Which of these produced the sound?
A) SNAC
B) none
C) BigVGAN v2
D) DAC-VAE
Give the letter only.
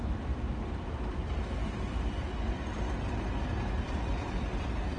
B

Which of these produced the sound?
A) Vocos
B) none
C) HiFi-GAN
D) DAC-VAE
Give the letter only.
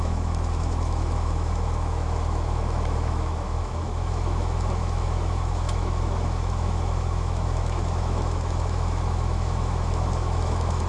D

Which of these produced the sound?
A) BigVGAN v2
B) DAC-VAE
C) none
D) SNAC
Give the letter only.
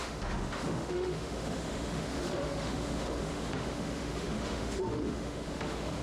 B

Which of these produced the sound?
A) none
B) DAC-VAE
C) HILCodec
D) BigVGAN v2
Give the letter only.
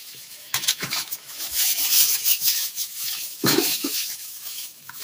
B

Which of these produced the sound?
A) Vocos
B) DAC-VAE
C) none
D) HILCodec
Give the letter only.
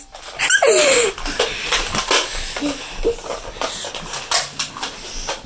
C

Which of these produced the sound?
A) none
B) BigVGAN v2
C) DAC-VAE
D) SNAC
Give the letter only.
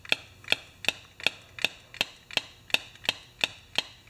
A